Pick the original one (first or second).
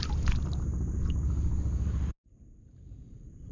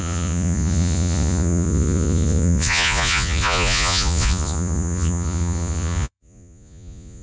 first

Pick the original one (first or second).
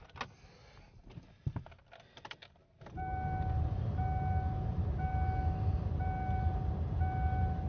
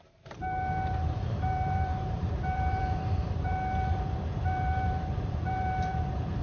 first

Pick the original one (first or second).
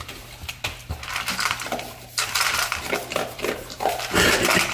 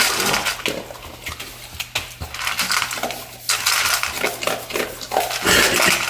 second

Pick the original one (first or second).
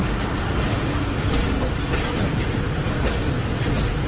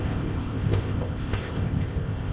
first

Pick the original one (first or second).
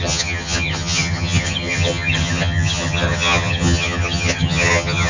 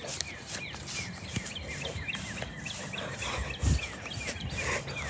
second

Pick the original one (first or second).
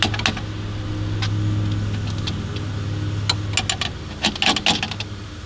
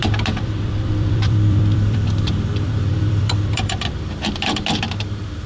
first